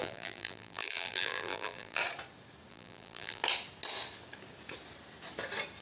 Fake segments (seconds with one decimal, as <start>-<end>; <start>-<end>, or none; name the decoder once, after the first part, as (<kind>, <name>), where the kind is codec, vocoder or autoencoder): 0.0-2.0 (vocoder, BigVGAN v2); 2.7-3.4